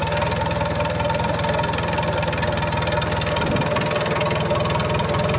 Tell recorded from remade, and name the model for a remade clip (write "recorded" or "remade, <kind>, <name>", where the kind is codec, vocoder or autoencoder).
recorded